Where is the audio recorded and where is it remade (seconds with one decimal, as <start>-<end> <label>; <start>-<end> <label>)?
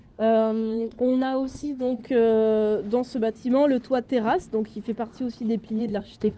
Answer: 0.0-2.0 remade; 2.0-5.8 recorded; 5.8-6.4 remade